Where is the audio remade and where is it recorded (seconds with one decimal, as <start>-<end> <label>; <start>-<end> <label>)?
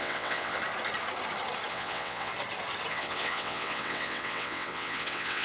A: 0.0-0.6 remade; 0.6-1.7 recorded; 1.7-2.3 remade; 2.3-2.9 recorded; 2.9-5.4 remade